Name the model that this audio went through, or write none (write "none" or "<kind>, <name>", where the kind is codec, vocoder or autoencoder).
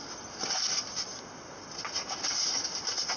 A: none